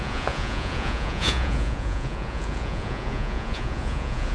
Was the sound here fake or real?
fake